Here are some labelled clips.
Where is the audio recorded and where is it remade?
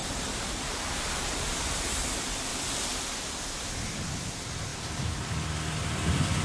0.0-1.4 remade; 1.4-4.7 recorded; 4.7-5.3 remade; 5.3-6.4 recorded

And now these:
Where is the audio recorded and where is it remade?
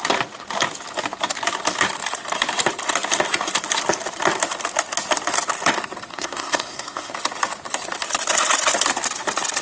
0.0-6.1 recorded; 6.1-7.1 remade; 7.1-9.6 recorded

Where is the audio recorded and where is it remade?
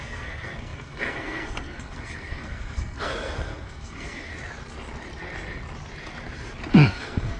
0.0-4.3 remade; 4.3-6.7 recorded; 6.7-7.4 remade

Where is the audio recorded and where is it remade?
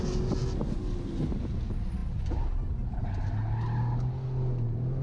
0.0-5.0 recorded